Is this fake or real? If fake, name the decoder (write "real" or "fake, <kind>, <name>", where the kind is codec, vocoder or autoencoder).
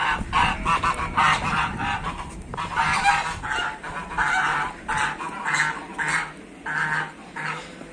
real